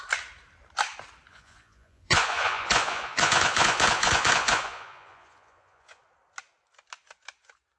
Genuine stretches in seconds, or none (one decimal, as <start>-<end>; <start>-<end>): 0.0-1.3; 6.0-7.8

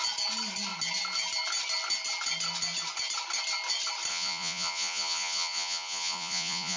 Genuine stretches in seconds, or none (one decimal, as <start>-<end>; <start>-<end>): 0.0-4.1